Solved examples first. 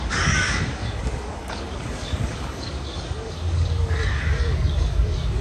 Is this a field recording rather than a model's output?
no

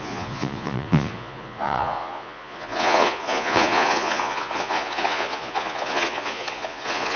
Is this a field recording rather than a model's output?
no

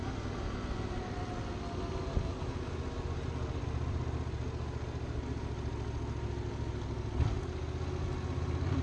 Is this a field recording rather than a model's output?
yes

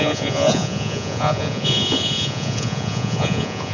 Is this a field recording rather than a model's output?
no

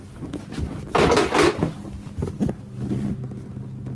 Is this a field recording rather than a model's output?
yes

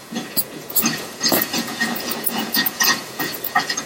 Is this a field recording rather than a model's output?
no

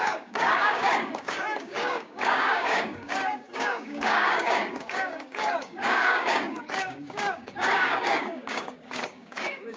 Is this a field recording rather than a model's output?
no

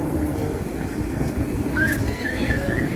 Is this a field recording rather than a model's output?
no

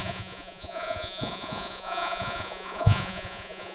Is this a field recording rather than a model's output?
no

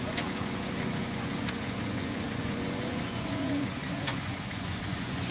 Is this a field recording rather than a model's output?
no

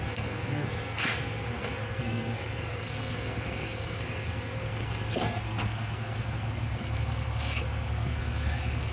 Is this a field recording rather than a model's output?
no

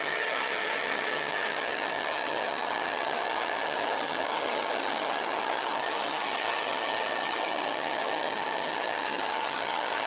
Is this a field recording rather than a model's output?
no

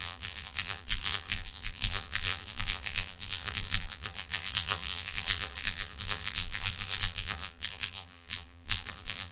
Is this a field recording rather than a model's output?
no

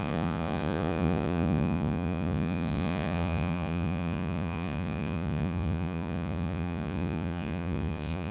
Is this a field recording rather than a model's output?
no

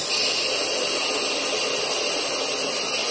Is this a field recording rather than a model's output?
yes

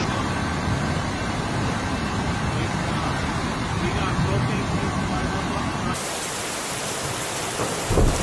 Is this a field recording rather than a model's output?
no